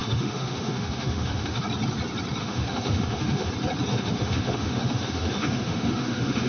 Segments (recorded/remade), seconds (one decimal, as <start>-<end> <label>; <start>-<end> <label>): 0.0-1.6 remade; 1.6-2.4 recorded; 2.4-3.5 remade; 3.5-3.9 recorded; 3.9-6.5 remade